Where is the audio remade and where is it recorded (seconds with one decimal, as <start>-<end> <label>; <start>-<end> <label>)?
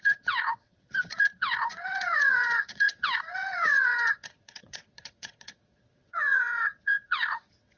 0.0-7.8 remade